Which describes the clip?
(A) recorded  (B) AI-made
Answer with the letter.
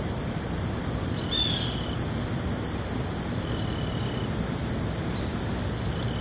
A